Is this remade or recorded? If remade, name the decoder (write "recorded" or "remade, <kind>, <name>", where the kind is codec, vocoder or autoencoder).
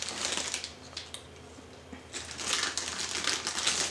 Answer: recorded